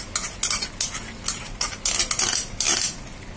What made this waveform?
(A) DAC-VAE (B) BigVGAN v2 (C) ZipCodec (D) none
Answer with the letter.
D